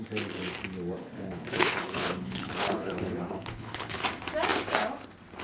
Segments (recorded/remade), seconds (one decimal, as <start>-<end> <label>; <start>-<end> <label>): 0.0-1.0 recorded; 1.0-4.0 remade; 4.0-5.4 recorded